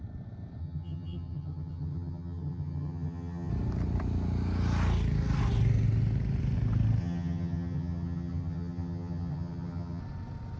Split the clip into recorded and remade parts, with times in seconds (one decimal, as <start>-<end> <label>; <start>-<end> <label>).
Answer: 0.0-0.6 recorded; 0.6-3.5 remade; 3.5-7.0 recorded; 7.0-10.0 remade; 10.0-10.6 recorded